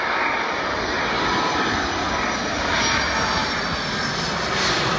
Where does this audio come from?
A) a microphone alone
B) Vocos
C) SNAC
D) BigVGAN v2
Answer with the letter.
A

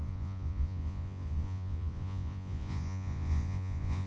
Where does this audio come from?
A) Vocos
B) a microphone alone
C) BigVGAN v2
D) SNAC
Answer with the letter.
A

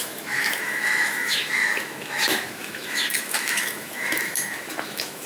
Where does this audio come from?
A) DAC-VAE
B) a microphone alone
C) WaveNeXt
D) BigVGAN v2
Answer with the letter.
A